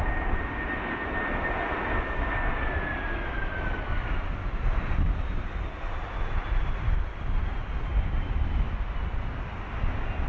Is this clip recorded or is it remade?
recorded